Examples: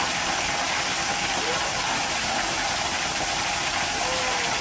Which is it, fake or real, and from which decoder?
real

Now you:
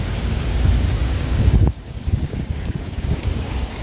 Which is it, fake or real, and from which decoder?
fake, codec, DAC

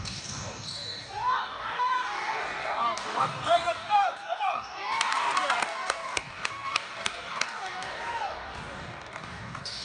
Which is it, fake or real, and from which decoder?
fake, codec, DAC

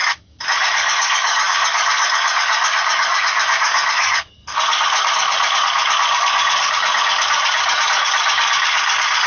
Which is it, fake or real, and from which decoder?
fake, codec, DAC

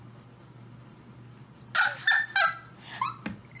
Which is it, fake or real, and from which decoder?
real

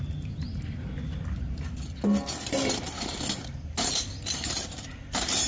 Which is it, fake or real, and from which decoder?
real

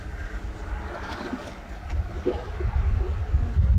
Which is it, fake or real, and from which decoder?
fake, codec, DAC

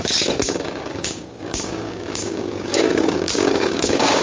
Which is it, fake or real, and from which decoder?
fake, codec, DAC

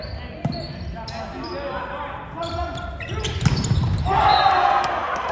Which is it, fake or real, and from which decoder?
real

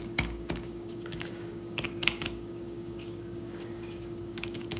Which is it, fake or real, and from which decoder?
fake, codec, DAC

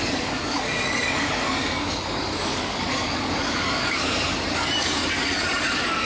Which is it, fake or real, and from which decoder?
fake, codec, DAC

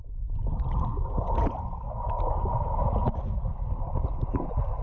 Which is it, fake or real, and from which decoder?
real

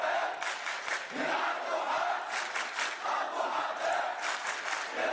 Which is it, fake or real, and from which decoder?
real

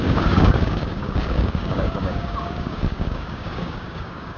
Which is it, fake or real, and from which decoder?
fake, codec, DAC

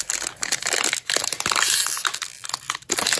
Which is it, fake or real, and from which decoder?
real